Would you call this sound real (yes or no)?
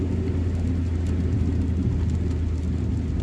yes